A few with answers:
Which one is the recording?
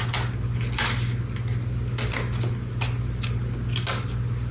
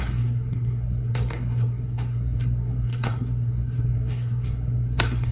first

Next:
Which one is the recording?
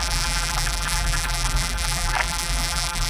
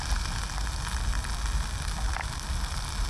second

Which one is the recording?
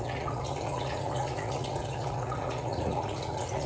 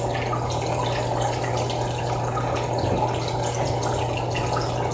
second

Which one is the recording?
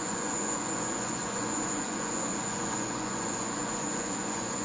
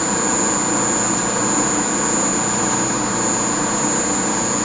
second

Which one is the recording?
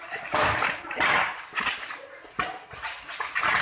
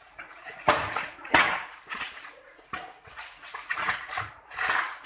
first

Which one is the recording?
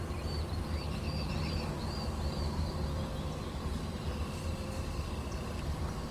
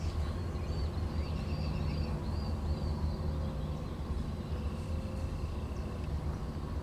second